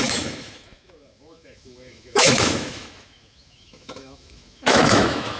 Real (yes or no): no